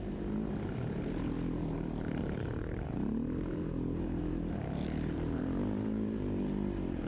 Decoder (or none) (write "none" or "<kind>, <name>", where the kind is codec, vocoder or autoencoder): vocoder, BigVGAN v2